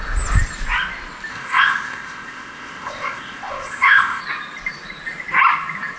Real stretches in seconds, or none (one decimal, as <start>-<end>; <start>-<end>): 0.0-1.3; 4.2-6.0